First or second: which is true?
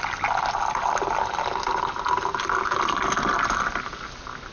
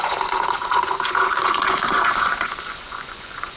first